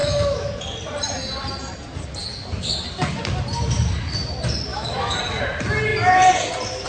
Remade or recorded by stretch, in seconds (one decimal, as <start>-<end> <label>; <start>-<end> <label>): 0.0-0.5 remade; 0.5-4.7 recorded; 4.7-5.2 remade; 5.2-6.9 recorded